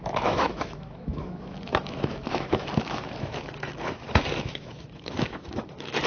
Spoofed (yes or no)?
yes